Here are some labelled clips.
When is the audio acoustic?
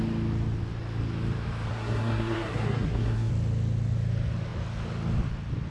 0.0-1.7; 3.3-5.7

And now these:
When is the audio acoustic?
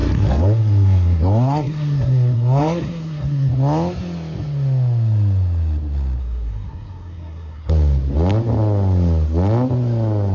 3.5-6.2; 7.7-10.3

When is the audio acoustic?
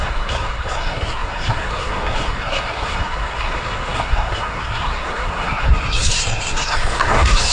none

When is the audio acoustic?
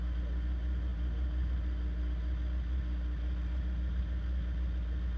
0.0-5.2